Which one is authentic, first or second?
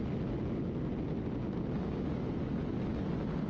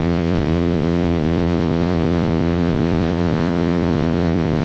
first